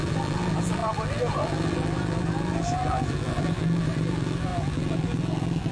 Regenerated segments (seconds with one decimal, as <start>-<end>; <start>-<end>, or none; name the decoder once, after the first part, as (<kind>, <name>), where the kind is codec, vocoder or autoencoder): 0.0-5.7 (vocoder, BigVGAN v2)